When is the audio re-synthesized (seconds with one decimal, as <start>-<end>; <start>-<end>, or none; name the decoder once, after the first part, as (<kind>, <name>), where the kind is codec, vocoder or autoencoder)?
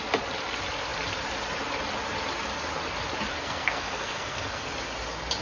3.3-4.7 (codec, SNAC)